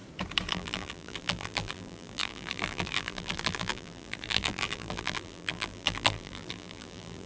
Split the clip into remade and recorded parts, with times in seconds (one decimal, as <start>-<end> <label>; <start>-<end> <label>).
0.0-0.5 recorded; 0.5-7.3 remade